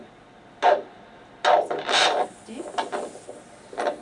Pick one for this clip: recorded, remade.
recorded